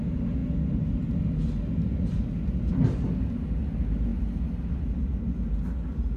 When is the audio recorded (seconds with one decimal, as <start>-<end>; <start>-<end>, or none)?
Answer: 0.0-6.2